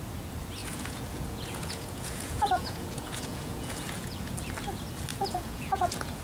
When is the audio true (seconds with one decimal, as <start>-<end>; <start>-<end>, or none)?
0.0-0.6; 4.3-5.1

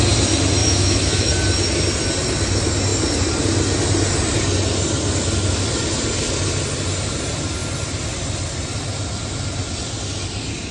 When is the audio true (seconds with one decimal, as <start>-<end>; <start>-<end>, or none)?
0.0-0.6; 1.3-10.7

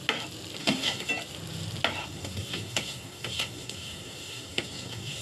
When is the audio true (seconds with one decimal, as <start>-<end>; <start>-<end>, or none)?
0.0-0.6; 1.1-2.0

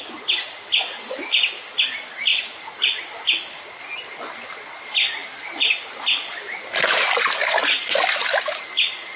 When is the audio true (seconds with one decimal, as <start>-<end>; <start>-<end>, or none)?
0.0-9.2

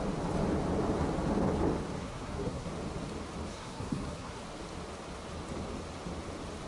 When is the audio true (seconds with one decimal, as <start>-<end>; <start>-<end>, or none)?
0.0-2.0; 2.7-3.5; 4.4-6.7

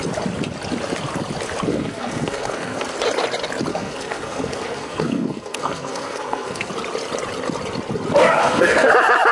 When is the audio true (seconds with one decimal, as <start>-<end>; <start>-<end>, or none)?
0.0-1.7; 2.8-3.7; 6.7-8.4; 8.9-9.3

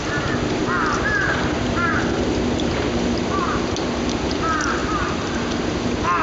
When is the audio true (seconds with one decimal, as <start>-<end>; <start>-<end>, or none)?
0.0-4.8; 5.4-6.2